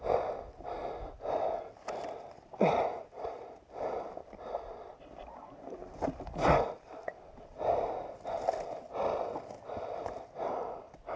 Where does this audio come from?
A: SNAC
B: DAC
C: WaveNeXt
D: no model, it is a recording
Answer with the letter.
D